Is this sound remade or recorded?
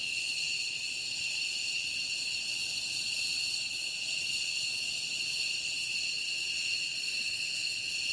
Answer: remade